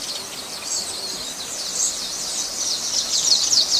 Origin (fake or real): real